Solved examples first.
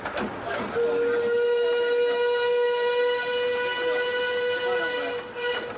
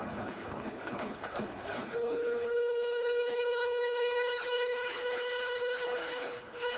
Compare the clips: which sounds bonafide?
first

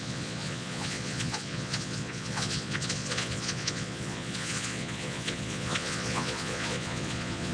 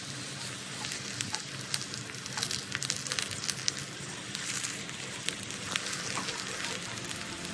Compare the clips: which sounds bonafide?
second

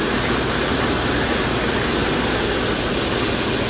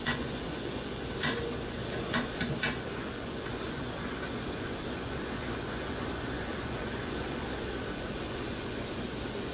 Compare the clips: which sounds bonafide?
first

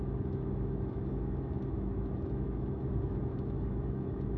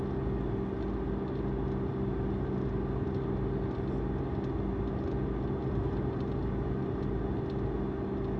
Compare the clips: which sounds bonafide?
second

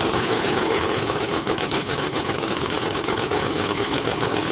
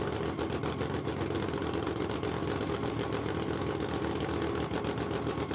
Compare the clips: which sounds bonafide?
second